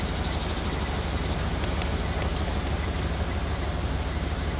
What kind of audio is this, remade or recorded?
recorded